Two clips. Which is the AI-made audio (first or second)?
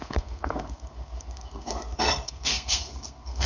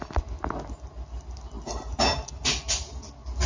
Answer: first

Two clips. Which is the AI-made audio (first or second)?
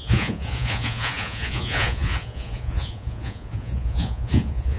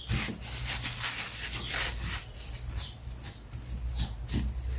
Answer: first